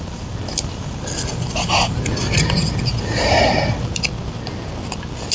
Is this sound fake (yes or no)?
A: no